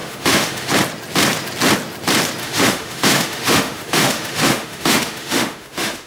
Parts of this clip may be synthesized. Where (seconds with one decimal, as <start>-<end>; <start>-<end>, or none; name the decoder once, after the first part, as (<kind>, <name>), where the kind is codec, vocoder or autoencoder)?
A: 0.0-0.7 (autoencoder, DAC-VAE); 2.4-6.1